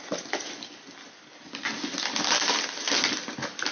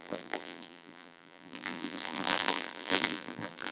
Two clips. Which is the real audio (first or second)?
first